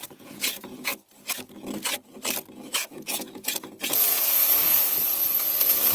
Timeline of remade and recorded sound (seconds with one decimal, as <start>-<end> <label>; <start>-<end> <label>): 0.0-0.9 remade; 0.9-2.7 recorded; 2.7-5.9 remade